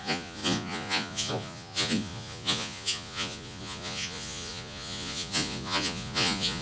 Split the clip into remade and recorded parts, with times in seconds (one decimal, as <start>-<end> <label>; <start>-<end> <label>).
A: 0.0-6.6 remade